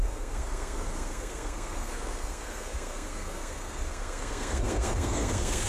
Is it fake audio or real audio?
fake